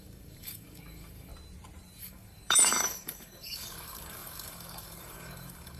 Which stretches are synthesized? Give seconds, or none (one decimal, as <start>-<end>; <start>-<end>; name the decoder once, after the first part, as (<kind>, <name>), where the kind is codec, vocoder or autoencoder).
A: 0.0-1.3 (codec, DAC); 2.0-5.8